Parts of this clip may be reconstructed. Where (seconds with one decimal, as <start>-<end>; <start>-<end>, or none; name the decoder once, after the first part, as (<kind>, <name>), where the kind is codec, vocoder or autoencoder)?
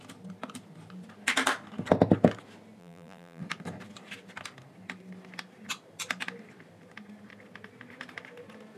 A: 2.8-3.4 (vocoder, BigVGAN v2)